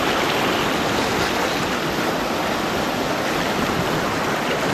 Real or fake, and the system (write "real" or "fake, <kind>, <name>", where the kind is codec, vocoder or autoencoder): real